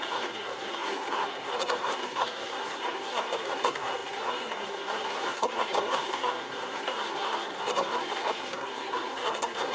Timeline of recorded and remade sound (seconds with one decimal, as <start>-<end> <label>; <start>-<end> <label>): 0.0-9.7 remade

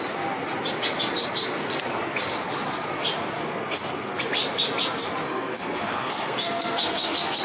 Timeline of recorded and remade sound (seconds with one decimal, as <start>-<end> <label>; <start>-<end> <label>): 0.0-3.4 recorded; 3.4-4.2 remade; 4.2-5.2 recorded; 5.2-7.4 remade

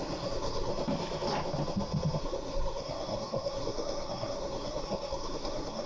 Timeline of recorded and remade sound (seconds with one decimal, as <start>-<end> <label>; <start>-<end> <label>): 0.0-0.7 remade; 0.7-2.2 recorded; 2.2-5.9 remade

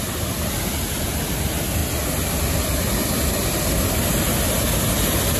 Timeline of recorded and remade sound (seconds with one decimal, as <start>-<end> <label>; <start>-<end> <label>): 0.0-5.4 recorded